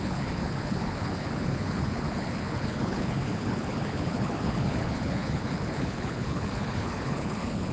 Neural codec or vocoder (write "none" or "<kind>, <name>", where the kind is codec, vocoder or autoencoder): codec, HILCodec